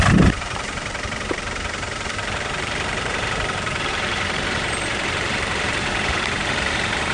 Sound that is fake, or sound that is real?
fake